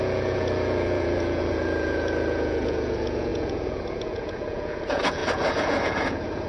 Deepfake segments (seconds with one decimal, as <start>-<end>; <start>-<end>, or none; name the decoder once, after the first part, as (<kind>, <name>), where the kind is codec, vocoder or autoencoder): 0.0-6.5 (vocoder, Vocos)